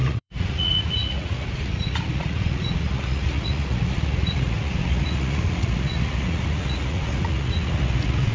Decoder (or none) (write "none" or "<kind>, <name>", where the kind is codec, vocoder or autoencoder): vocoder, Vocos